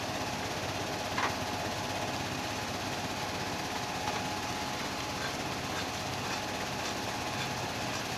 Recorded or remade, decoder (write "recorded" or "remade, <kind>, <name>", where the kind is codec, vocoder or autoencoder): recorded